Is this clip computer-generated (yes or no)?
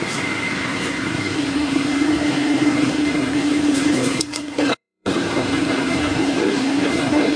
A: yes